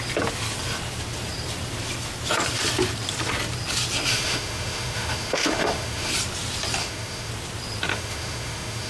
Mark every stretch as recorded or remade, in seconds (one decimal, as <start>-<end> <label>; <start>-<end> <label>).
0.0-4.1 recorded; 4.1-6.1 remade; 6.1-6.8 recorded; 6.8-7.3 remade; 7.3-7.9 recorded; 7.9-8.9 remade